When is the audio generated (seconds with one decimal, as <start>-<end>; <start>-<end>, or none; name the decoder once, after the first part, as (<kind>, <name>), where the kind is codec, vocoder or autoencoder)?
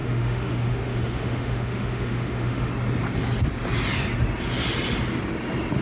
0.0-2.7 (autoencoder, DAC-VAE)